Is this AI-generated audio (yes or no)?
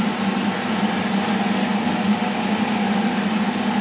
no